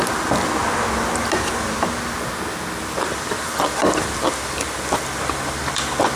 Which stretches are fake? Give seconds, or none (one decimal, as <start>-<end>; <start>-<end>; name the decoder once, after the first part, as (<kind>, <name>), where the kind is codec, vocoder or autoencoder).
0.0-0.6 (vocoder, BigVGAN v2); 3.0-6.2